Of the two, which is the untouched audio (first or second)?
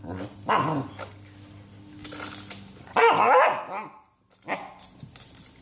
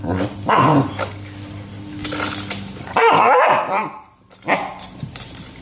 first